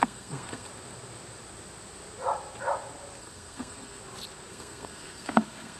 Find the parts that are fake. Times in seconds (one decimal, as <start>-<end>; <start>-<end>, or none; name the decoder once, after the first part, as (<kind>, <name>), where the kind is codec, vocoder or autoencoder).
0.0-0.7 (codec, SNAC); 3.2-4.0; 4.5-5.8